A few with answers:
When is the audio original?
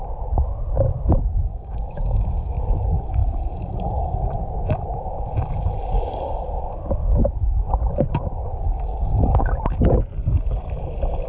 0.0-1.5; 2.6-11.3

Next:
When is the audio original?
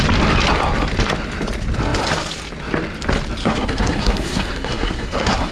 0.0-3.4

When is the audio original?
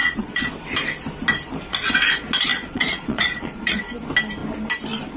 0.5-2.5; 3.8-5.2